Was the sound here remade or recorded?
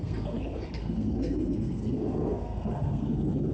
remade